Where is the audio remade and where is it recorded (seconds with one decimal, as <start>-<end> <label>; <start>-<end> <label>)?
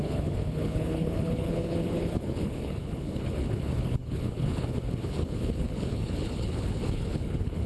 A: 0.0-7.7 remade